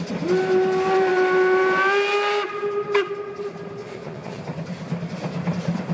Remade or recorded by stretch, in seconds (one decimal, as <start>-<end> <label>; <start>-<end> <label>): 0.0-3.8 recorded; 3.8-4.4 remade; 4.4-5.9 recorded